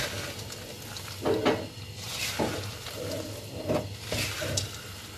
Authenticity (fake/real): real